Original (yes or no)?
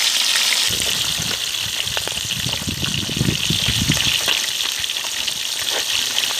yes